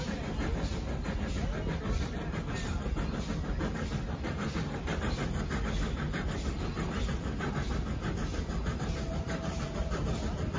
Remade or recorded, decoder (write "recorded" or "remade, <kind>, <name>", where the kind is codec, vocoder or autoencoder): recorded